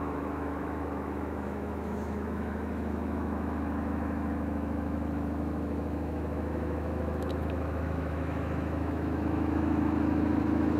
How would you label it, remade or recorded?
remade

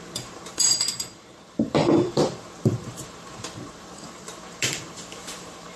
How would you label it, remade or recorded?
remade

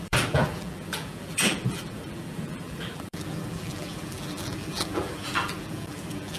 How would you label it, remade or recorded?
remade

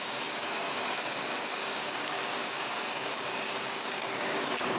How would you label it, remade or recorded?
remade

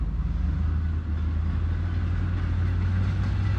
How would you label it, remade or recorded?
recorded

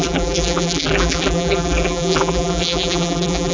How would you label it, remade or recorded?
remade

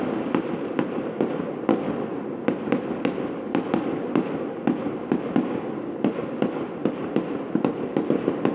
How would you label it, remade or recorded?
recorded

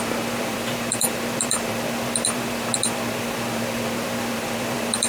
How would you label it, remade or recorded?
remade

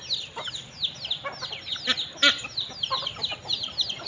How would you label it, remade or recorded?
recorded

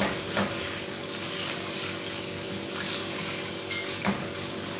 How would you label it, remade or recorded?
remade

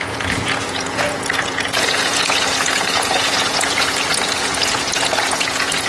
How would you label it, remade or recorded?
remade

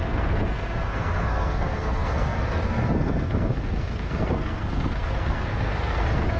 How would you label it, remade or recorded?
remade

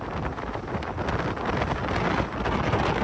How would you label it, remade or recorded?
recorded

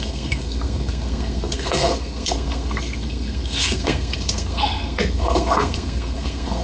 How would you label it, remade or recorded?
remade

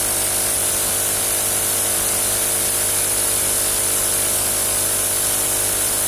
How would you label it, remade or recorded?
recorded